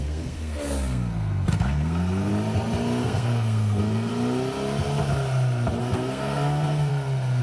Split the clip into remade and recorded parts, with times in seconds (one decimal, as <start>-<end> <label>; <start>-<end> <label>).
0.0-2.3 remade; 2.3-3.0 recorded; 3.0-4.1 remade; 4.1-5.8 recorded; 5.8-6.9 remade; 6.9-7.4 recorded